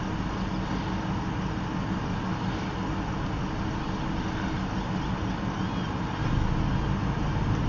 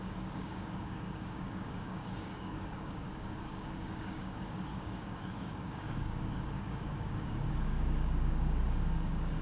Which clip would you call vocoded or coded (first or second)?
second